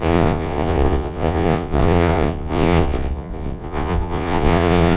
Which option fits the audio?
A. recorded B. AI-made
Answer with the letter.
B